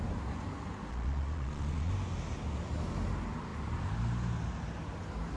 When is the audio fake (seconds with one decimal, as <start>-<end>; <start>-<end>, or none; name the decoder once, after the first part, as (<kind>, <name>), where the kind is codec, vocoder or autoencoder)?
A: 0.9-1.9 (vocoder, Vocos)